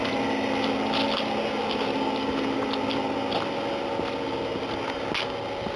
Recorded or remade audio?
recorded